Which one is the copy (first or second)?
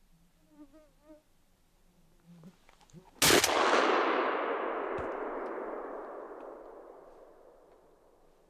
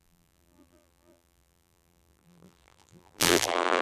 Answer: second